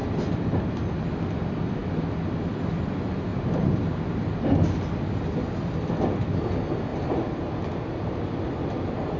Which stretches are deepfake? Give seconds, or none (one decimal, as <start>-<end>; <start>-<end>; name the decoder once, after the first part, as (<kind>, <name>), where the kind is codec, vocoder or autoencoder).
0.0-0.6 (vocoder, BigVGAN v2); 3.3-4.3; 6.9-7.5